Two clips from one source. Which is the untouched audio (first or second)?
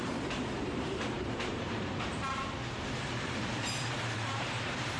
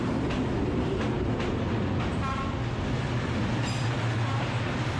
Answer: second